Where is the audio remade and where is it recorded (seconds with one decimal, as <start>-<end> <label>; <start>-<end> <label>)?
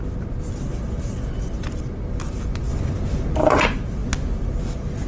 0.0-5.1 recorded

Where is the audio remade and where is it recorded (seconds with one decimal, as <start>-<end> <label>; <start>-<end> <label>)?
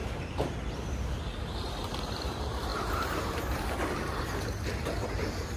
0.0-5.6 remade